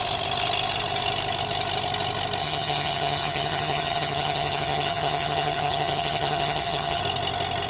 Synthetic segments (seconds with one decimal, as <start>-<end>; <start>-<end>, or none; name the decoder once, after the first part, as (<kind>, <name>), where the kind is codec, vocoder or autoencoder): 2.4-7.0 (vocoder, HiFi-GAN)